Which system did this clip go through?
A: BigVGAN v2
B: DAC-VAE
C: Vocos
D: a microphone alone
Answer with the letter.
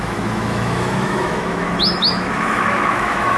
B